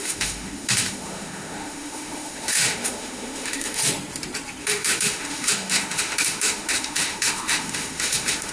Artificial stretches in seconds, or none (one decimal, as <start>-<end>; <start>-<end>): 0.0-3.8; 4.6-8.5